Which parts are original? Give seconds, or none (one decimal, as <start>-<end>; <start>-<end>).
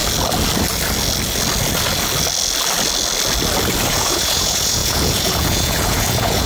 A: 0.0-3.9